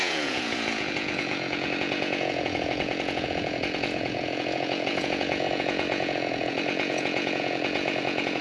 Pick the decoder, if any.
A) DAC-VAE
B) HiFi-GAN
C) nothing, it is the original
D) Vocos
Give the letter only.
D